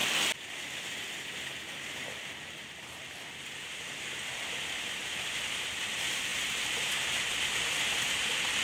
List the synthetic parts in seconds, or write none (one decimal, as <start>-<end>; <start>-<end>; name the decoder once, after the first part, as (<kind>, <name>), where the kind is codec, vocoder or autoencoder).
none